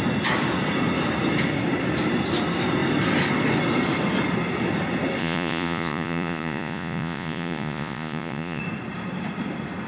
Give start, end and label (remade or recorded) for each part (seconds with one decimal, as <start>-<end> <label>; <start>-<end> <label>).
0.0-5.2 recorded; 5.2-8.6 remade; 8.6-9.9 recorded